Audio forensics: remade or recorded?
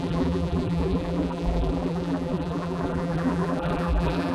remade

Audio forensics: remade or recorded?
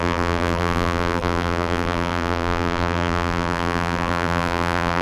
remade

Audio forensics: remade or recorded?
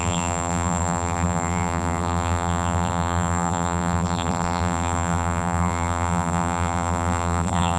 remade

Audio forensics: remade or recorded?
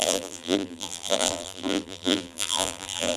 remade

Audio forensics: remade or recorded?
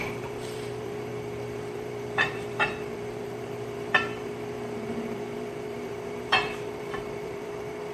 remade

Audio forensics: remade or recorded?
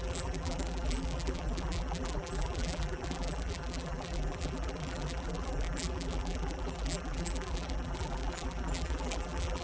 remade